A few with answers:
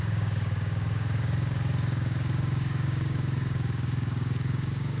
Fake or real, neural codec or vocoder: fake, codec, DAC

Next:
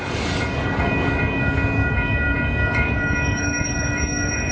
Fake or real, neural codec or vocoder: fake, codec, DAC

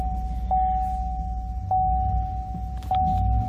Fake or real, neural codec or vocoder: real